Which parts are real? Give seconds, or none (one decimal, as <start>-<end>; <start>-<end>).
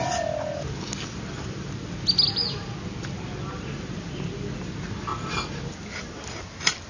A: 0.0-6.9